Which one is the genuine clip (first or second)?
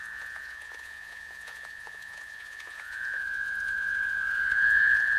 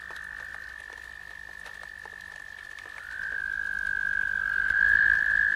second